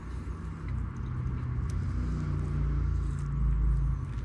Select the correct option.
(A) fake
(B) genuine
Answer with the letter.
B